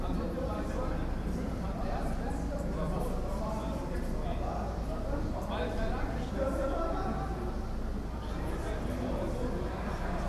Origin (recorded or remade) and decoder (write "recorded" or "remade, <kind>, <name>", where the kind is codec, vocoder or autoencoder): recorded